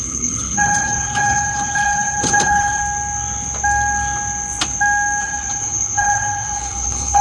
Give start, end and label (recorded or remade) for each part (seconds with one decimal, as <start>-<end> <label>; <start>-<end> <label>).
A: 0.0-2.8 remade; 2.8-5.2 recorded; 5.2-7.2 remade